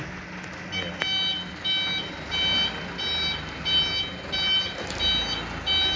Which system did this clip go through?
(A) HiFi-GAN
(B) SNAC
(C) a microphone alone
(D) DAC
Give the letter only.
C